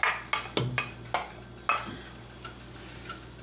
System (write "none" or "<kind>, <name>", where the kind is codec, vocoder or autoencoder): none